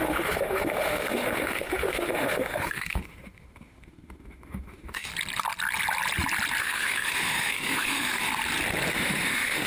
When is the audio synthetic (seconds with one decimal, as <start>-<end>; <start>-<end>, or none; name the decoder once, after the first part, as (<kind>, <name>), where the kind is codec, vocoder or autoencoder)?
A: 0.0-5.1 (autoencoder, DAC-VAE); 6.6-8.3; 8.9-9.7